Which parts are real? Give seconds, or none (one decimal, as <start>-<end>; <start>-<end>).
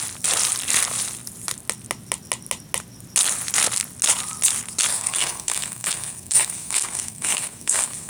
0.0-4.9